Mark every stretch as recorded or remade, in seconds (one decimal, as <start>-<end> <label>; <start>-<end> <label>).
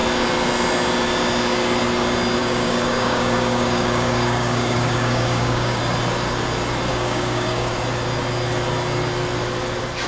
0.0-2.4 recorded; 2.4-5.8 remade; 5.8-6.9 recorded; 6.9-7.7 remade; 7.7-10.1 recorded